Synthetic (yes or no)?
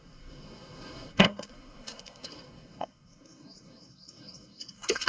yes